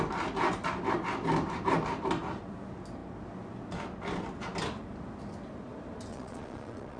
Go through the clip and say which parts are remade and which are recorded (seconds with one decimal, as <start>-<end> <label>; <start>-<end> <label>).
0.0-6.1 recorded; 6.1-7.0 remade